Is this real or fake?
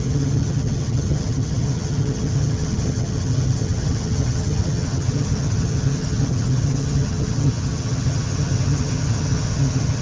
fake